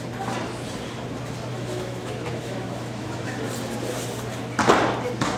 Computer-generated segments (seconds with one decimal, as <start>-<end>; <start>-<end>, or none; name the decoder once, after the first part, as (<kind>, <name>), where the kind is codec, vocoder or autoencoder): 1.5-3.5 (autoencoder, DAC-VAE)